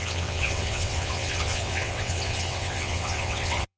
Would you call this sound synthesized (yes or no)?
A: yes